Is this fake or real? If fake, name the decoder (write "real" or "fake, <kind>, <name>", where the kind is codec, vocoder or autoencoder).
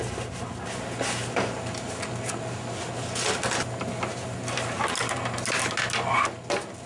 real